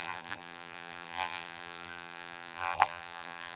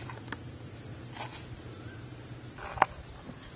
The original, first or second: second